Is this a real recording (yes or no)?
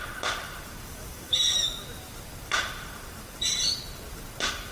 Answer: no